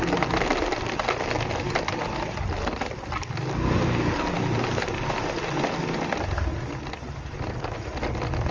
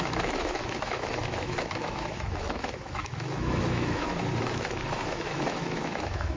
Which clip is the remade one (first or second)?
second